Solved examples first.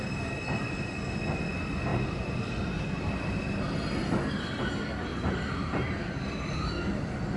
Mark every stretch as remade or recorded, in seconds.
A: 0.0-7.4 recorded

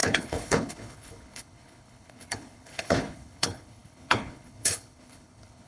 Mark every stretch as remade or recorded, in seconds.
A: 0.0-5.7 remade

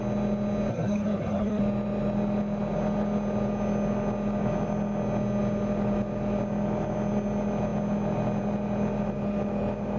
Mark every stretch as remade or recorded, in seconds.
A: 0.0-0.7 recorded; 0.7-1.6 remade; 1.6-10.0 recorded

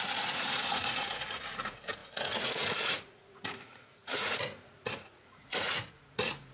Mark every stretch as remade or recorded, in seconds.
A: 0.0-6.5 remade

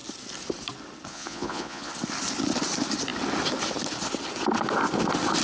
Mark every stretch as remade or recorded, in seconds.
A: 0.0-1.1 recorded; 1.1-1.9 remade; 1.9-5.4 recorded